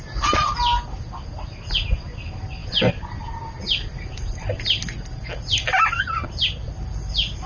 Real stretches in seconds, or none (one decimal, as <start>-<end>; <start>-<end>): 0.0-7.5